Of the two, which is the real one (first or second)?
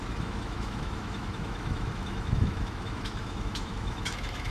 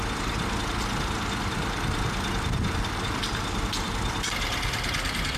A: second